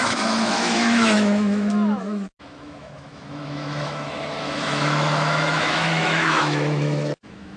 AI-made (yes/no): yes